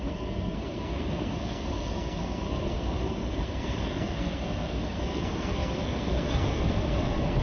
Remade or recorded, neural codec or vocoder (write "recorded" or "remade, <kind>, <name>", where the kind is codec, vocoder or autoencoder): remade, codec, SNAC